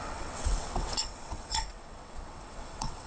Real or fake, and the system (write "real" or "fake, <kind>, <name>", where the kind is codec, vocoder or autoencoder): fake, vocoder, WaveNeXt